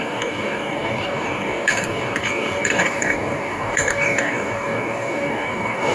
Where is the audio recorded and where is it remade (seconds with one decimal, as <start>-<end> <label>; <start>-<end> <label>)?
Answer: 0.0-5.9 remade